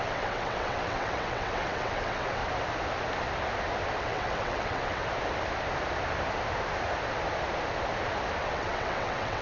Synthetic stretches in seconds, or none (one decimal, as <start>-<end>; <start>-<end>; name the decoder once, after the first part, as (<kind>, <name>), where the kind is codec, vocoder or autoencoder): 0.0-2.4 (vocoder, WaveNeXt); 4.0-5.0; 8.4-9.4